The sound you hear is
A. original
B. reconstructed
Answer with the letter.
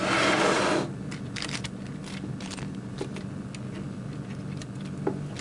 A